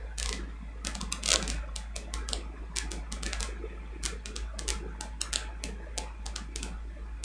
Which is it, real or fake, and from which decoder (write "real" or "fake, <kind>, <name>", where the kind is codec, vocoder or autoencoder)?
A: real